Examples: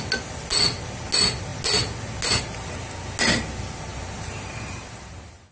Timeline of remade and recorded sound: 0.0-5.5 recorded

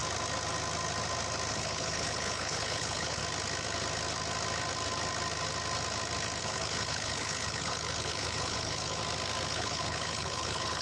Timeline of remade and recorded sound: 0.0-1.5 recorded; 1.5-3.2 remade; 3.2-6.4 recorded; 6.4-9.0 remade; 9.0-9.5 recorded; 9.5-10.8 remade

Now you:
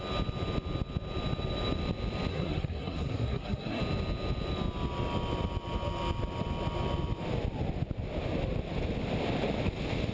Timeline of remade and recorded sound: 0.0-2.3 recorded; 2.3-3.8 remade; 3.8-10.1 recorded